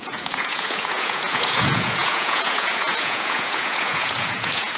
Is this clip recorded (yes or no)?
no